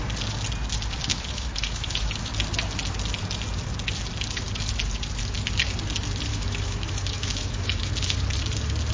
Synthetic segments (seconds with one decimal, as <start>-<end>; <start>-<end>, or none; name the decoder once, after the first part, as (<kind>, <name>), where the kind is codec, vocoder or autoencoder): 1.1-2.3 (autoencoder, DAC-VAE); 6.3-7.9